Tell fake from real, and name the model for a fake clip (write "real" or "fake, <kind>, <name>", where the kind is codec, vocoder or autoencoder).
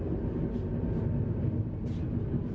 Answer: real